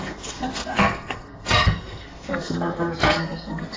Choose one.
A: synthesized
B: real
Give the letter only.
A